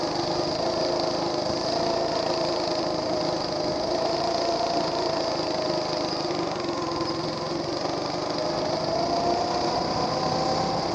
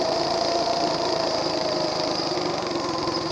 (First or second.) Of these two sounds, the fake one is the second